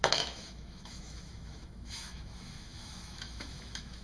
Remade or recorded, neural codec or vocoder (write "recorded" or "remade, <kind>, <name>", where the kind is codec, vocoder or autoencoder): remade, autoencoder, DAC-VAE